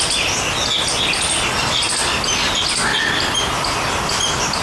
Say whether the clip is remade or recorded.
recorded